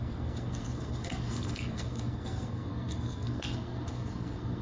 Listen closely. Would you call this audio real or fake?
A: fake